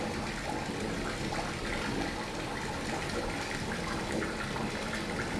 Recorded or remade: recorded